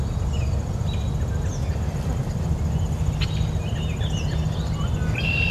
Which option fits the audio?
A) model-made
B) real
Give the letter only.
B